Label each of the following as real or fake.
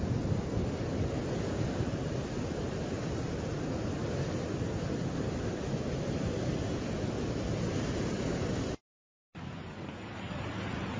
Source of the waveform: real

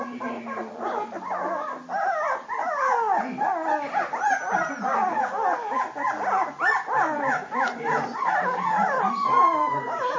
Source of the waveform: real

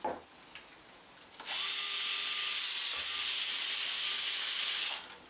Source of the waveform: real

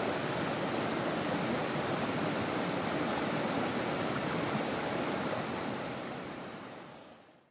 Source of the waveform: real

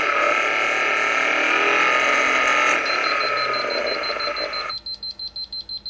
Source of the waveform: real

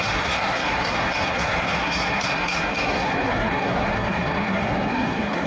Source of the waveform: fake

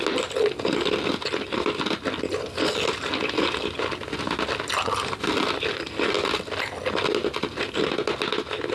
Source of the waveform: real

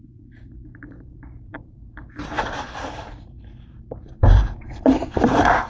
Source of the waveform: fake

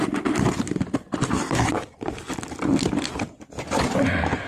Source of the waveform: real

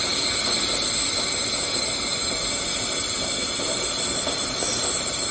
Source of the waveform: real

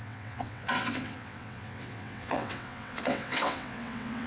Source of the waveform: fake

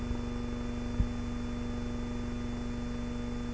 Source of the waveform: real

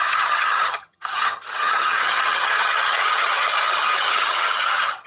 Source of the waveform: fake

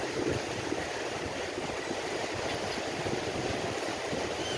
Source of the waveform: real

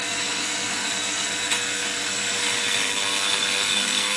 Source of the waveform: fake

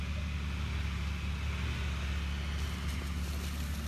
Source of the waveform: real